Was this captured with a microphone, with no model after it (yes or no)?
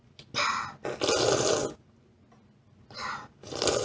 yes